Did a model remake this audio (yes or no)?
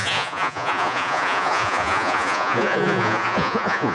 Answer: yes